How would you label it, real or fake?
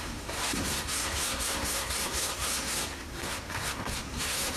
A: fake